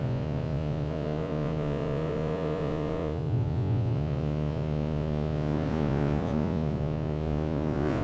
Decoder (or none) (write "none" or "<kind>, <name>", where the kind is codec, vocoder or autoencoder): vocoder, Vocos